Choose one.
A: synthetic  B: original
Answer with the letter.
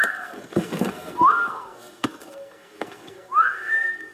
A